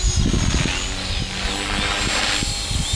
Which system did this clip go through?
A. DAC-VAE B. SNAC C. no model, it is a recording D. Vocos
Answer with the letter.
C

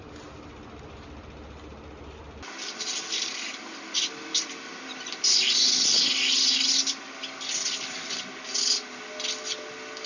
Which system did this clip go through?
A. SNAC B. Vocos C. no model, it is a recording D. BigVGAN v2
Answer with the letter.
C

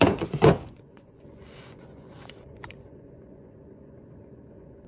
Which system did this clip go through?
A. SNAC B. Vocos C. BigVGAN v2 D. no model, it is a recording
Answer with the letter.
B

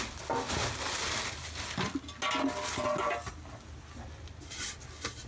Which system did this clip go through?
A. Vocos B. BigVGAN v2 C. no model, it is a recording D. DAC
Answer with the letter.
C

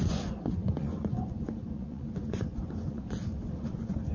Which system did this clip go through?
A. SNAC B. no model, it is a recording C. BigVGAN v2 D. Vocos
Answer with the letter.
D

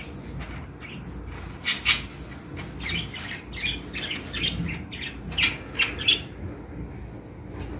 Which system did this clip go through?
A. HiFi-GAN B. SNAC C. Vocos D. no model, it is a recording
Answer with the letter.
D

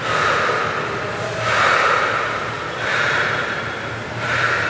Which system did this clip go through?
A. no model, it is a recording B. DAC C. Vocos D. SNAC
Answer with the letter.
A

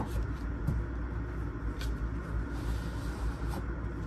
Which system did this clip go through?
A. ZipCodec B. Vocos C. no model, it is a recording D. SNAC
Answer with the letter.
C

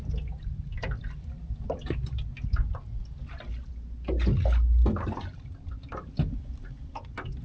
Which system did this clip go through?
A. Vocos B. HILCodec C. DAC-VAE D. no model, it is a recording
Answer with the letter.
D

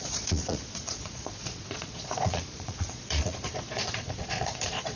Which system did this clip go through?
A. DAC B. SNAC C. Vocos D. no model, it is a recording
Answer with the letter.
C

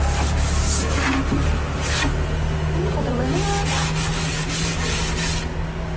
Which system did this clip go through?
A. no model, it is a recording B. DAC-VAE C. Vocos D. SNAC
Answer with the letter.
A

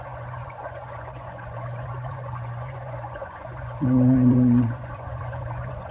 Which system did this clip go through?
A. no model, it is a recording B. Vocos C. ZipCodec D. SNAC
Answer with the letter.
B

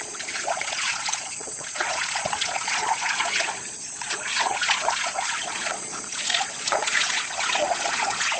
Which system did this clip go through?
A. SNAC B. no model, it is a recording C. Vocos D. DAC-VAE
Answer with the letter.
C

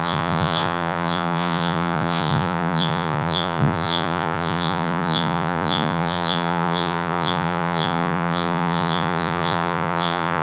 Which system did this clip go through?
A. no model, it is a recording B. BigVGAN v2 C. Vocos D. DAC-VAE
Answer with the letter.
C